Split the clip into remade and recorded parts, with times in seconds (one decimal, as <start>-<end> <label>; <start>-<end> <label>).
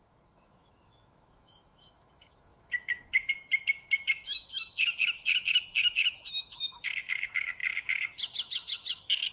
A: 0.0-9.3 remade